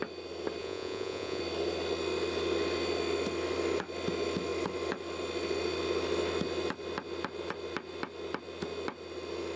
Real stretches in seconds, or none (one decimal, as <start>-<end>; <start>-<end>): 0.0-0.6; 1.4-9.6